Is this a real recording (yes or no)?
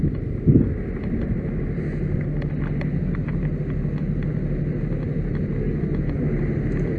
yes